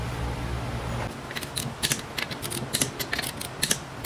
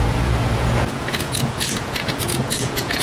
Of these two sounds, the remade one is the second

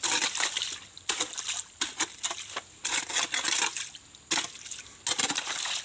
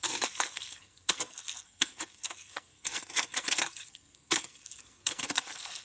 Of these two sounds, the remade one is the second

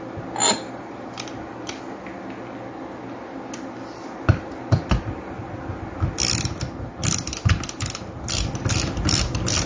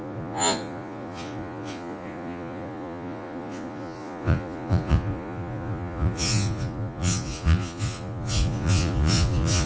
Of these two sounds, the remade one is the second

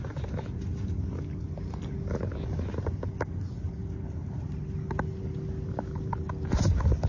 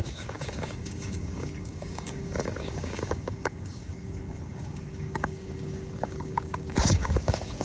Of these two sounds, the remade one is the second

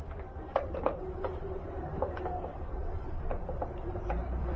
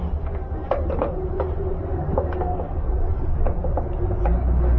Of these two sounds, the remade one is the first